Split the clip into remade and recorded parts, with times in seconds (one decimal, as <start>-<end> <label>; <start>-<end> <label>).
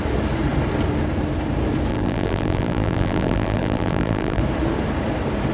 0.0-1.9 recorded; 1.9-4.4 remade; 4.4-5.5 recorded